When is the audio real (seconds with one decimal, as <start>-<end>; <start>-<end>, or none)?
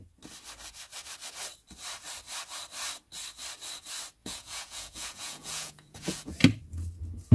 0.0-4.2; 6.3-7.3